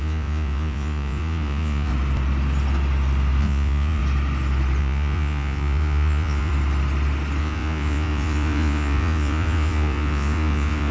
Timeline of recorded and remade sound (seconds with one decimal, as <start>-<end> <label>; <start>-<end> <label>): 0.0-1.9 remade; 1.9-3.4 recorded; 3.4-4.0 remade; 4.0-4.8 recorded; 4.8-6.5 remade; 6.5-7.4 recorded; 7.4-10.9 remade